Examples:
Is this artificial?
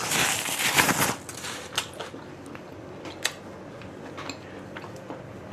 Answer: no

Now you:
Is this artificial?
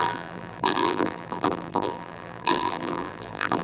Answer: yes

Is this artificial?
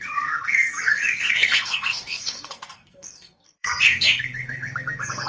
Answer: yes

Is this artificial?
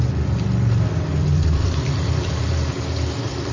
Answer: yes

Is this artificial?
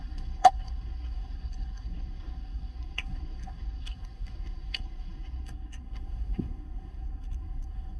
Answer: yes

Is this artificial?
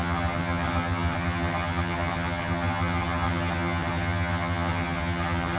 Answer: yes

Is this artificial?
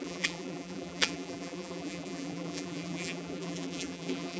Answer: yes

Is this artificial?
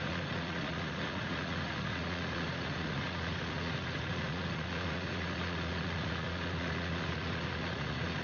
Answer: yes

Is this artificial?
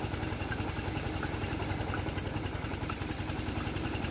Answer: no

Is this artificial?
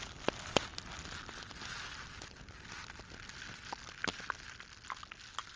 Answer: no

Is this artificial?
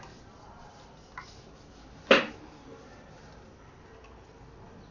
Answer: no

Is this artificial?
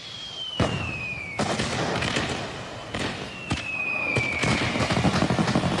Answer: no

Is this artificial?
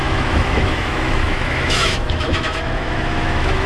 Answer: yes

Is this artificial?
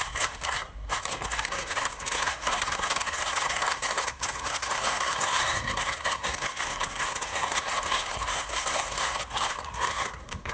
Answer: yes